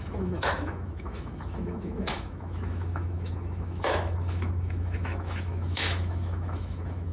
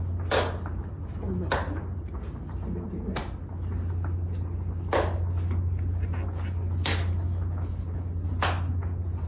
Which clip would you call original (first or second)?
second